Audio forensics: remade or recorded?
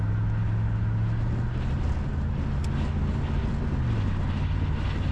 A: recorded